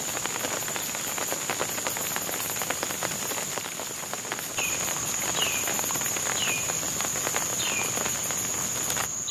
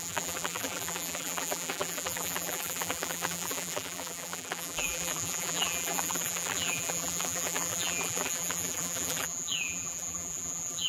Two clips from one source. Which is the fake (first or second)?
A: second